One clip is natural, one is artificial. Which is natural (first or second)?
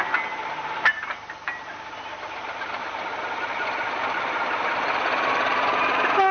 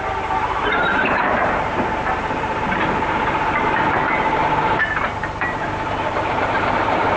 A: first